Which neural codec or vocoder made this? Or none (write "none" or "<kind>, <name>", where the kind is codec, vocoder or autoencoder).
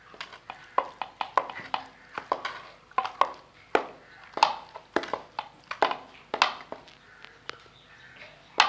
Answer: none